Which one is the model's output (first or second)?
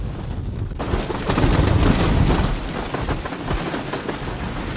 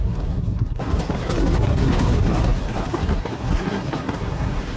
second